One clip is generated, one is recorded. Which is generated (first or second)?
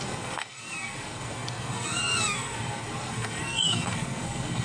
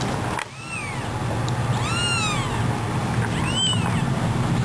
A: first